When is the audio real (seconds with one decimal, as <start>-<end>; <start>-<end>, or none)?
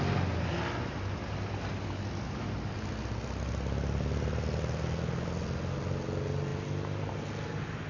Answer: 0.0-7.9